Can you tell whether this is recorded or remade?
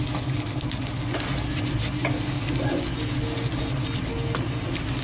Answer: recorded